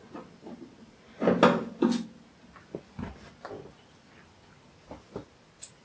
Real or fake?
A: real